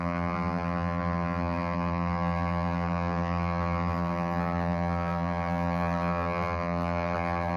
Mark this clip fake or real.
fake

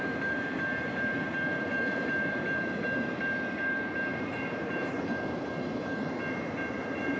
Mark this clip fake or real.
fake